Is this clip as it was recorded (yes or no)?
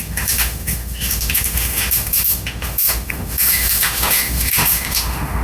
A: no